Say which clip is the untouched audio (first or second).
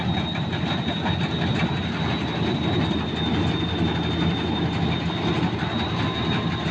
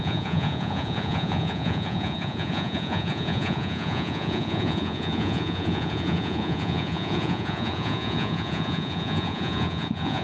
first